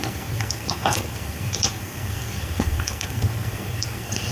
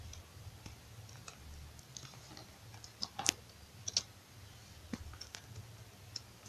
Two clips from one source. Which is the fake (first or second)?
first